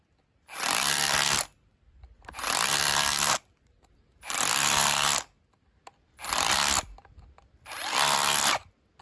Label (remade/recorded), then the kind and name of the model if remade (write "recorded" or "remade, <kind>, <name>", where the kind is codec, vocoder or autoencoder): recorded